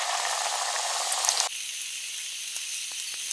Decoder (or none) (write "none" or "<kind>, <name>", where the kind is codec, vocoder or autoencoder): none